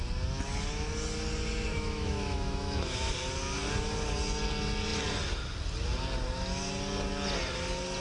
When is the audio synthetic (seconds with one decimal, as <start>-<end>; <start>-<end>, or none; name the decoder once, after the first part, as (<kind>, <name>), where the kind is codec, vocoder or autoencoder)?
1.7-3.1 (autoencoder, DAC-VAE)